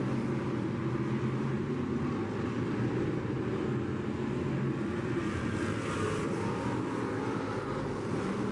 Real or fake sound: real